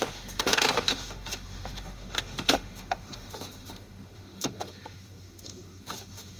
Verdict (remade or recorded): remade